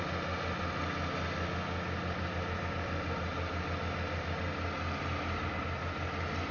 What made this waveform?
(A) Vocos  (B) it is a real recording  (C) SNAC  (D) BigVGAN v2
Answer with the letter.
B